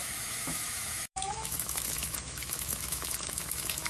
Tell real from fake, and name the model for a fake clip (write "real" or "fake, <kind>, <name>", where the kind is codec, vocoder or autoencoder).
fake, autoencoder, DAC-VAE